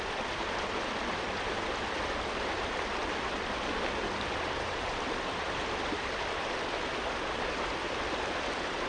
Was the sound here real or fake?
fake